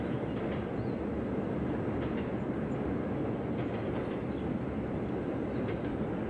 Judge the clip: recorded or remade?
recorded